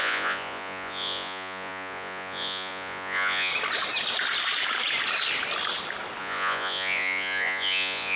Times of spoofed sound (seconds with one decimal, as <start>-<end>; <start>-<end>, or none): 0.0-3.5; 6.2-8.2